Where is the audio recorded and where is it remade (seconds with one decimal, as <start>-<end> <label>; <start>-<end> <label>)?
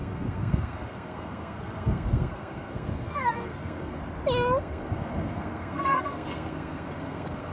0.0-4.0 remade; 4.0-4.6 recorded; 4.6-7.5 remade